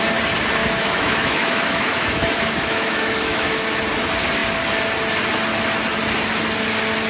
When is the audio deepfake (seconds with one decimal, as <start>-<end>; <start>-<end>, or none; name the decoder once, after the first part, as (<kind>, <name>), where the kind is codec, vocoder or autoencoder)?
0.6-3.8 (autoencoder, DAC-VAE)